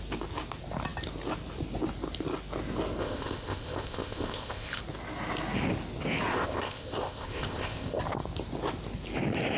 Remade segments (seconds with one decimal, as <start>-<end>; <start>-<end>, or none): 3.0-4.8; 6.3-8.0